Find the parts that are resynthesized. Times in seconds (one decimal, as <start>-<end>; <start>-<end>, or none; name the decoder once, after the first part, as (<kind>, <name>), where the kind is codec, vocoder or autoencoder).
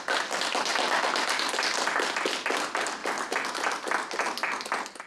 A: none